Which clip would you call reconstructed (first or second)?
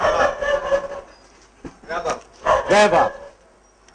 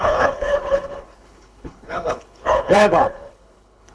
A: second